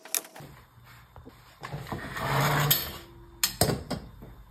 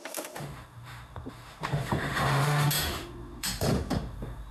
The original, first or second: first